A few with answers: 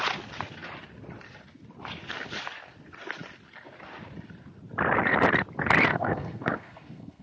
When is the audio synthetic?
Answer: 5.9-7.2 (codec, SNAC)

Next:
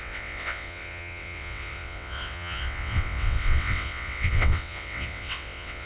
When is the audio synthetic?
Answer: 0.0-5.9 (vocoder, WaveNeXt)

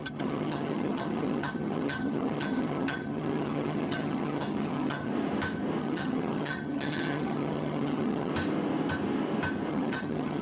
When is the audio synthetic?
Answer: 0.0-5.1 (vocoder, HiFi-GAN); 5.8-8.3; 9.7-10.4